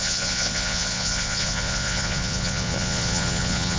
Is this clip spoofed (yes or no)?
yes